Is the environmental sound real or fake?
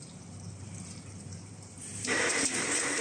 fake